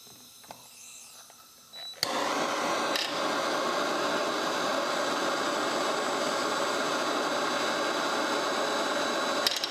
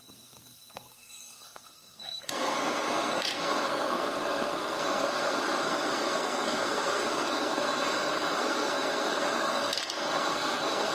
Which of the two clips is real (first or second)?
first